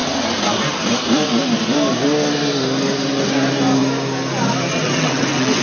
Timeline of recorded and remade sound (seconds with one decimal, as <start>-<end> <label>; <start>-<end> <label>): 0.0-4.7 recorded; 4.7-5.6 remade